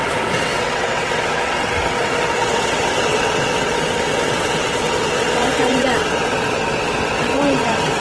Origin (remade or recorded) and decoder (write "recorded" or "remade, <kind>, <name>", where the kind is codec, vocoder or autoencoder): remade, vocoder, WaveNeXt